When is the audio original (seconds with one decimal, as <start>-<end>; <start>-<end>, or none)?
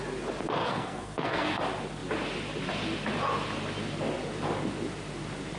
0.0-0.6; 1.6-5.6